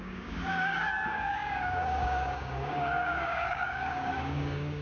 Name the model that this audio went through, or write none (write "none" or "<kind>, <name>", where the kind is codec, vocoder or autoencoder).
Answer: codec, DAC